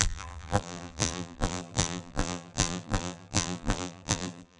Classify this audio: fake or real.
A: fake